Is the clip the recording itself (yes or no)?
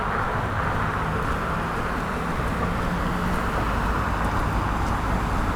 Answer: yes